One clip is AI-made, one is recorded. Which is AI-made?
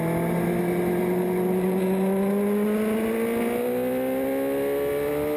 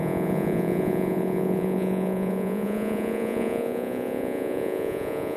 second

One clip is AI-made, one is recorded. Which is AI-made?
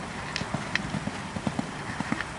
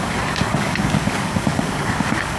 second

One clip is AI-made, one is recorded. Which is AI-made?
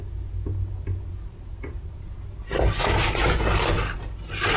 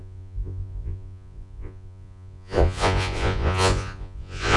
second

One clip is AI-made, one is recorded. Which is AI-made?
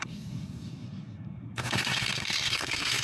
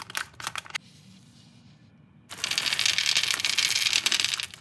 first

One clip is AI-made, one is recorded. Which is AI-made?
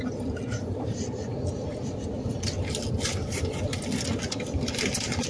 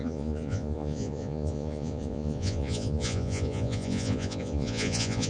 second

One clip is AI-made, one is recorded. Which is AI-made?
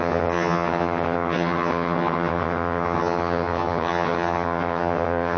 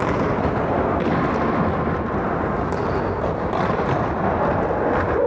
first